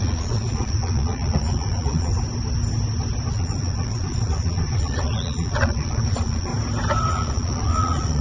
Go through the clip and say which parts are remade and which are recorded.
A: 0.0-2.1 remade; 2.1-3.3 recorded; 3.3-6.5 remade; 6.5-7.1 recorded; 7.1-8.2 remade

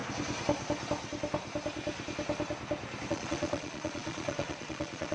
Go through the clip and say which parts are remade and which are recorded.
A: 0.0-3.1 recorded; 3.1-5.1 remade

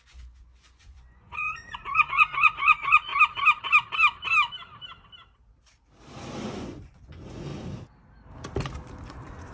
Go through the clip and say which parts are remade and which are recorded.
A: 0.0-3.1 remade; 3.1-6.4 recorded; 6.4-7.5 remade; 7.5-9.1 recorded; 9.1-9.5 remade